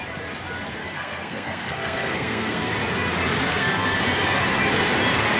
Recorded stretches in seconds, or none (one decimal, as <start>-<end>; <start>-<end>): 0.0-0.8; 2.7-3.5; 4.0-5.4